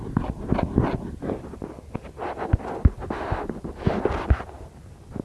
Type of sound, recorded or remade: recorded